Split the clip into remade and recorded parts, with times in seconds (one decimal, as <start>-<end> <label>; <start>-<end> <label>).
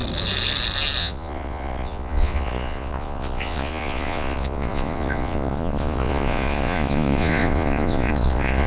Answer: 0.0-1.0 recorded; 1.0-8.7 remade